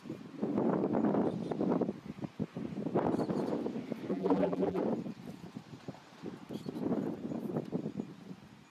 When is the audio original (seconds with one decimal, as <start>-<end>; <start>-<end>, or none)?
0.0-4.1; 4.8-8.7